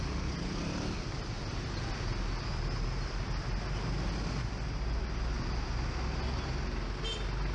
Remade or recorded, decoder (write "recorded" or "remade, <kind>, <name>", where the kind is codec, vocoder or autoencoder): recorded